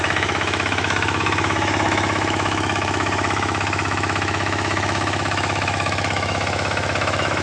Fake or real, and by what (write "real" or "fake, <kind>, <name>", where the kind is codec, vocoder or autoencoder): fake, autoencoder, DAC-VAE